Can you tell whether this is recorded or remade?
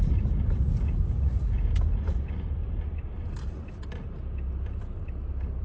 recorded